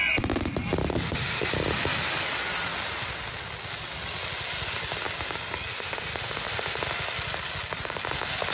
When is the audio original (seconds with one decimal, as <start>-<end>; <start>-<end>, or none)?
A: 0.0-0.9; 1.5-5.7; 6.8-8.5